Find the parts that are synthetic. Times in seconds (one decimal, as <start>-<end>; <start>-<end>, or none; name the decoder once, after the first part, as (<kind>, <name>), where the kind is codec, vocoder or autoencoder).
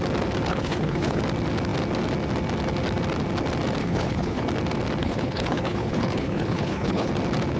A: 0.5-1.2 (codec, HILCodec); 3.8-4.4; 5.0-7.1